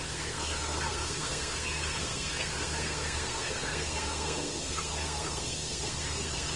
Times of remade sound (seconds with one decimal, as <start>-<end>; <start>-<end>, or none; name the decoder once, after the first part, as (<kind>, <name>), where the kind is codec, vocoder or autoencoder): 0.0-6.6 (codec, SNAC)